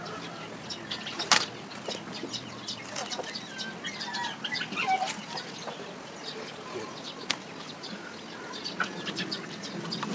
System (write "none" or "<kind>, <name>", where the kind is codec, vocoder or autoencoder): none